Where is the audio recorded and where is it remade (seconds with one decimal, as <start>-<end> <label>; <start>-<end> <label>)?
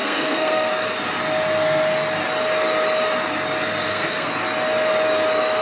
0.0-0.7 remade; 0.7-3.8 recorded; 3.8-4.3 remade; 4.3-5.6 recorded